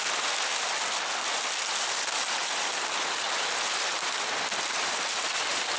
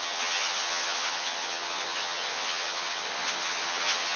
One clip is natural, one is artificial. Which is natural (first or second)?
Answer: first